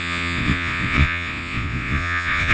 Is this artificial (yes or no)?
yes